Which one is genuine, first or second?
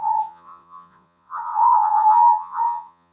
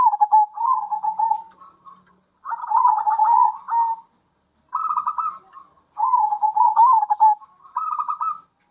second